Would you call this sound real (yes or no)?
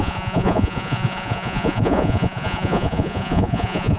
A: no